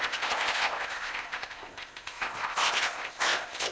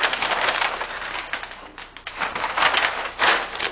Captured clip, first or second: second